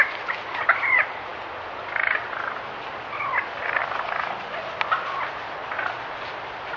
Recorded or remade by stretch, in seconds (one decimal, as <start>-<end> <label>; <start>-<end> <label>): 0.0-3.8 recorded; 3.8-4.6 remade; 4.6-6.8 recorded

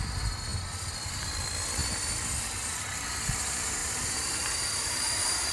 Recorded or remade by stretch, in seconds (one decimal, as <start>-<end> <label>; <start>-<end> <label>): 0.0-3.8 recorded; 3.8-5.5 remade